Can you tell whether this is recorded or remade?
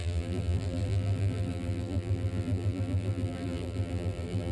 remade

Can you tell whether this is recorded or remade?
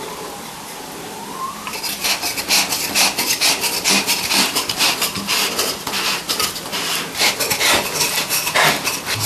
recorded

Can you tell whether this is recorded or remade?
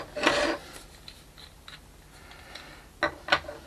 recorded